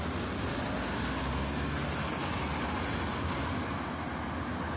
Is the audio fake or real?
real